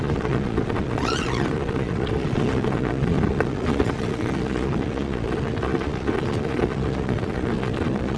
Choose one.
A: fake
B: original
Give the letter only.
A